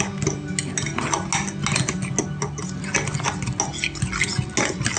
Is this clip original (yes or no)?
yes